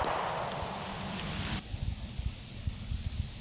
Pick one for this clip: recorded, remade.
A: recorded